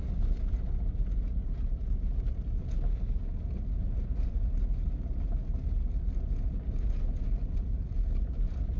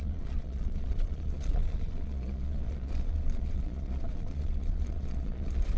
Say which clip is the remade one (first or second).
second